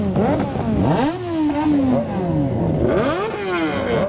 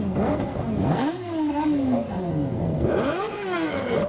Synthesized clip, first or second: second